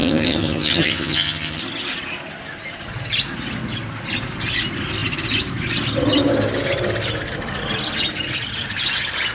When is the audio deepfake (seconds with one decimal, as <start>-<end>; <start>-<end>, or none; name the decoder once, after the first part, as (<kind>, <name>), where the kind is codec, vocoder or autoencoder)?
0.0-1.6 (vocoder, HiFi-GAN)